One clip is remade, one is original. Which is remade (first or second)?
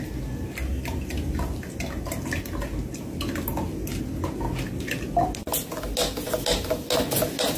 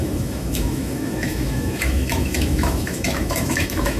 second